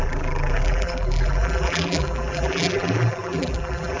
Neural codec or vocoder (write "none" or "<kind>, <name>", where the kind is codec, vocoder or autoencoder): vocoder, BigVGAN v2